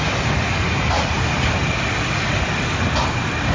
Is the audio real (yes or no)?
yes